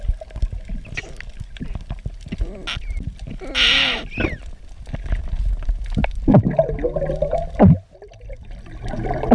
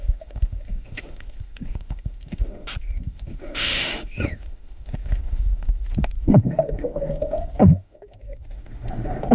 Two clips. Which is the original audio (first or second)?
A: first